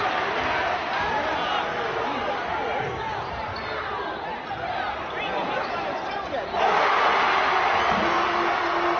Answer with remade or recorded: recorded